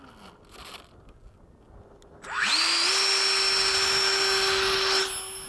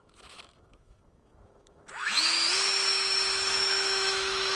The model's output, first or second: second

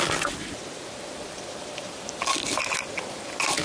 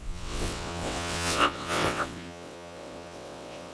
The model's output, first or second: second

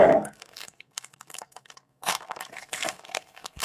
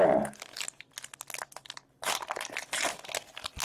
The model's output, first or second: first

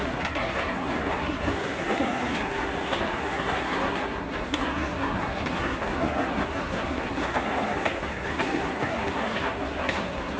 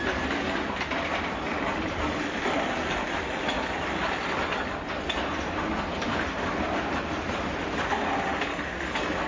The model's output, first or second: first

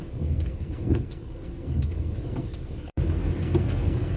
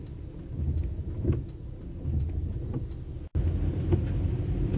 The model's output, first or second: first